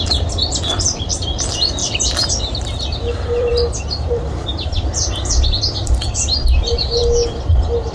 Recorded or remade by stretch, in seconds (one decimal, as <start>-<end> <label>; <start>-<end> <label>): 0.0-7.0 remade; 7.0-7.9 recorded